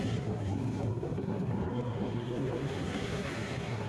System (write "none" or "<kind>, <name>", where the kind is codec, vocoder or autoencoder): codec, SNAC